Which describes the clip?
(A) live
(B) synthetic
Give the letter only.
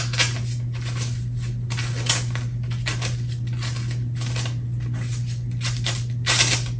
A